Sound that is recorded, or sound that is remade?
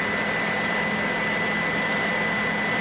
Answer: recorded